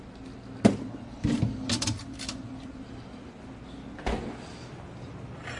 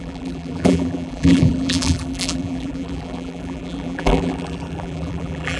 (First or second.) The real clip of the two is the first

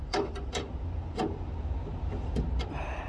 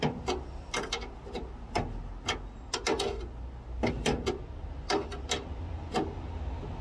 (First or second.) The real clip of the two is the second